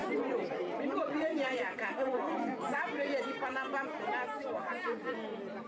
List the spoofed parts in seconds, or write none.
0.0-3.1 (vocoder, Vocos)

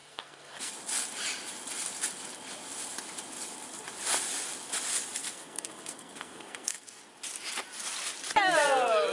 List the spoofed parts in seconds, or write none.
0.0-0.7 (codec, SNAC); 5.2-7.0

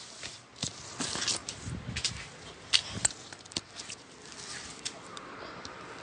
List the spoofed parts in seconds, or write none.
none

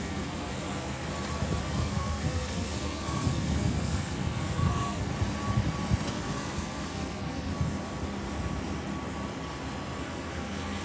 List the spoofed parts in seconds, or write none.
0.0-1.1 (codec, SNAC); 1.6-5.1; 6.1-7.5; 10.0-10.8

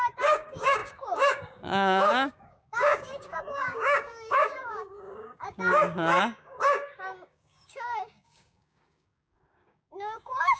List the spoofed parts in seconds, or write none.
0.0-10.6 (codec, DAC)

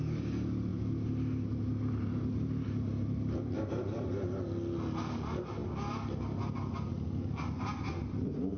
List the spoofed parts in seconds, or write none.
none

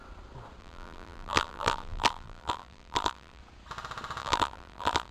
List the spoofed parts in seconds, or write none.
0.6-3.4 (vocoder, BigVGAN v2); 4.2-5.1